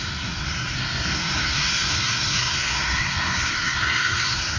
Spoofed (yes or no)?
yes